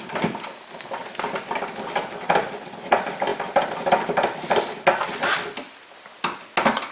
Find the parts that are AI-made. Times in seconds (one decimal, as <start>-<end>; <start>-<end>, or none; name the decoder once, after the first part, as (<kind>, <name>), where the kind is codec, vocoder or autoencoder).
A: 3.3-3.9 (vocoder, BigVGAN v2)